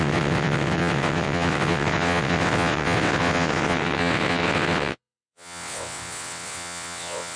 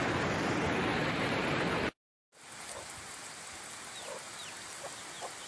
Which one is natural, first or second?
second